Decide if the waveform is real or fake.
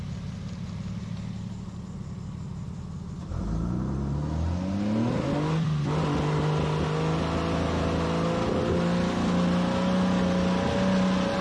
real